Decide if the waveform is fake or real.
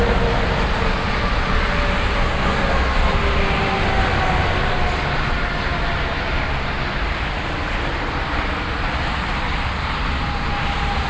real